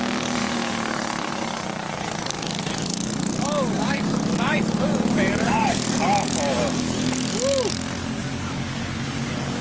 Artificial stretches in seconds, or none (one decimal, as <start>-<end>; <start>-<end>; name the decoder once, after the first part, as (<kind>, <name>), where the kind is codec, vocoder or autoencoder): 0.0-9.6 (codec, DAC)

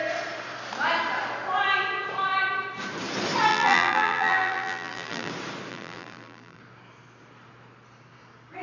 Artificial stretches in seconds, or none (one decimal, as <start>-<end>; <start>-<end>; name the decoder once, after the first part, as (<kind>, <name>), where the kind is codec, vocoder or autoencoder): 3.5-5.3 (vocoder, BigVGAN v2); 5.7-6.6

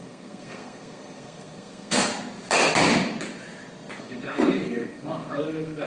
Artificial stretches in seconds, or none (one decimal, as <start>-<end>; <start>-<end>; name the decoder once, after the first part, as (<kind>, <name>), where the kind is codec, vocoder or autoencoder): 0.0-2.1 (codec, SNAC); 4.0-5.9

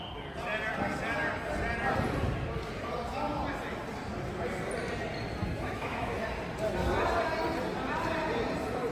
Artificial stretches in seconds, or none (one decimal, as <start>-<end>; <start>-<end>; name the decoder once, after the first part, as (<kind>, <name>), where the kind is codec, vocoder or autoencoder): 5.4-6.2 (autoencoder, DAC-VAE)

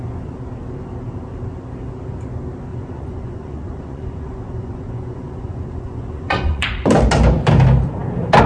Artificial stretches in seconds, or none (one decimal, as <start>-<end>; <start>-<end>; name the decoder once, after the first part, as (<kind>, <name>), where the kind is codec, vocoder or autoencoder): 2.7-6.9 (vocoder, Vocos)

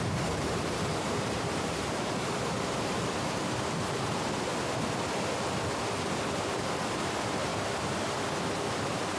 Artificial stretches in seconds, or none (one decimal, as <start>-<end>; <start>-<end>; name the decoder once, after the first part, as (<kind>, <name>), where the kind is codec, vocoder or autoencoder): 0.0-4.5 (vocoder, BigVGAN v2); 6.8-7.5; 8.3-9.2

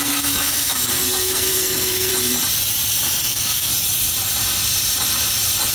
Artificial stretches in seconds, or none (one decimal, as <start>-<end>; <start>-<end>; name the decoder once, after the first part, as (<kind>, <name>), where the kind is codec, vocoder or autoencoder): 0.0-2.1 (codec, SNAC); 3.2-3.7